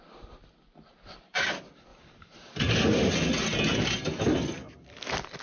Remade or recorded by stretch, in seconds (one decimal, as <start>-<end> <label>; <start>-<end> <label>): 0.0-1.9 recorded; 1.9-2.7 remade; 2.7-5.4 recorded

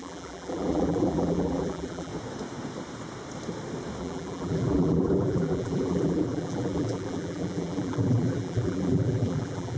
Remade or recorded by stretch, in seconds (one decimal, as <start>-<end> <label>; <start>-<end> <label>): 0.0-2.1 remade; 2.1-4.0 recorded; 4.0-9.8 remade